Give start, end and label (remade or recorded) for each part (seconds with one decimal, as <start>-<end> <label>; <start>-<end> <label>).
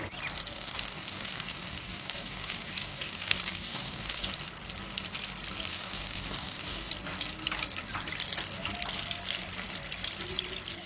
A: 0.0-0.4 recorded; 0.4-4.3 remade; 4.3-5.7 recorded; 5.7-6.9 remade; 6.9-10.9 recorded